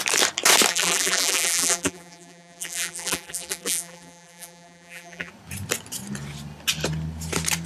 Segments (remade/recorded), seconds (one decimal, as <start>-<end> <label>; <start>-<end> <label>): 0.0-0.7 recorded; 0.7-5.3 remade; 5.3-7.7 recorded